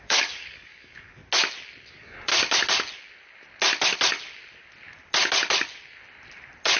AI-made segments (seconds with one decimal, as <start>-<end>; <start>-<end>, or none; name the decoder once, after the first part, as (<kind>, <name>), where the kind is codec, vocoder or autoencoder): 0.0-1.2 (codec, DAC); 1.9-2.3